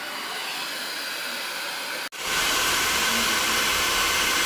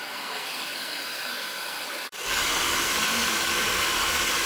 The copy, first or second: second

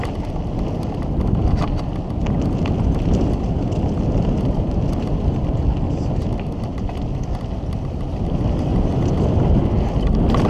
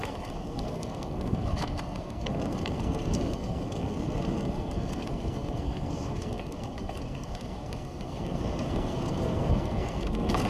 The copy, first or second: second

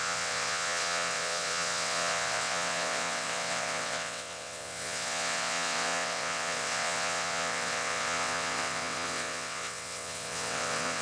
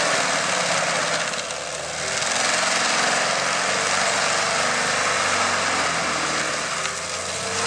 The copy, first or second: first